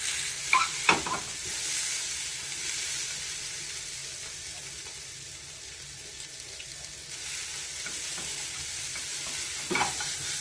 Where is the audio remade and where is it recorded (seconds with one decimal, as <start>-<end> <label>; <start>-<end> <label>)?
0.0-10.4 recorded